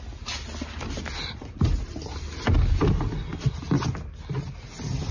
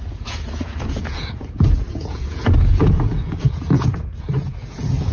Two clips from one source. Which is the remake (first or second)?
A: second